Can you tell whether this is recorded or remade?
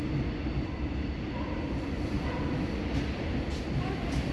recorded